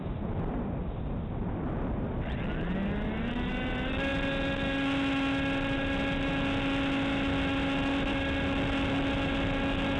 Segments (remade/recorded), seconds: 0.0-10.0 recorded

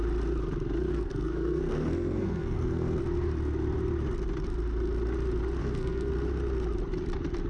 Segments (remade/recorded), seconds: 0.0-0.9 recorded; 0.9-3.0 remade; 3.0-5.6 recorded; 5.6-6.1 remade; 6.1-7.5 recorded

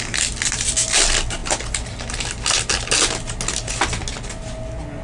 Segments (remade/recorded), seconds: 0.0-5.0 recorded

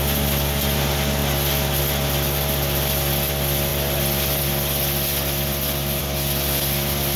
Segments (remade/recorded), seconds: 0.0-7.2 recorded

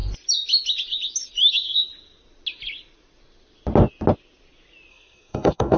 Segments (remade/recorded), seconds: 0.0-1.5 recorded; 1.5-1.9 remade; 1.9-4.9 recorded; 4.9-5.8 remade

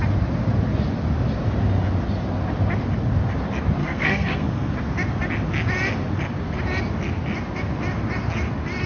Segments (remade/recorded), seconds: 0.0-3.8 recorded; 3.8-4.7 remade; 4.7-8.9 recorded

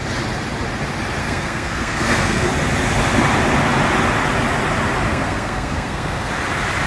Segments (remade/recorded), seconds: 0.0-1.2 recorded; 1.2-2.5 remade; 2.5-5.1 recorded; 5.1-6.3 remade; 6.3-6.9 recorded